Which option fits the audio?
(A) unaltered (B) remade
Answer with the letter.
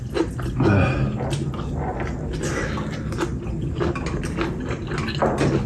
A